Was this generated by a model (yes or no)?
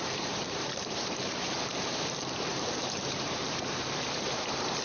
yes